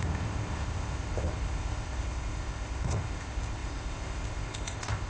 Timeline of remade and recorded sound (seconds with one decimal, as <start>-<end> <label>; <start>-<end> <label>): 0.0-5.1 remade